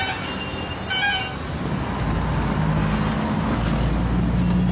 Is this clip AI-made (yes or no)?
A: no